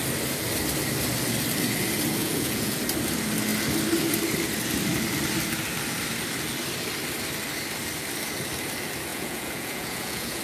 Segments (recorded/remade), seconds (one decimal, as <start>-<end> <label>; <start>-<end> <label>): 0.0-2.2 recorded; 2.2-2.8 remade; 2.8-9.1 recorded; 9.1-10.4 remade